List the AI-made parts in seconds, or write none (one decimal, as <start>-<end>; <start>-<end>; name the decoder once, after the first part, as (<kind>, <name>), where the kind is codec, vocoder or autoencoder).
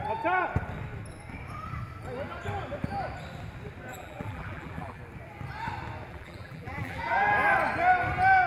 3.9-5.0 (vocoder, BigVGAN v2); 6.1-7.0